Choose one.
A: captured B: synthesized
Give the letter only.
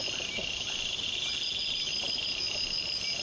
A